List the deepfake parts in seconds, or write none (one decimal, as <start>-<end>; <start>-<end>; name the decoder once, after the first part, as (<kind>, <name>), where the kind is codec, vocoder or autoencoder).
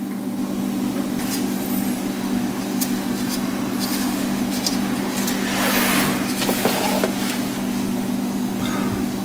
3.9-4.4 (autoencoder, DAC-VAE)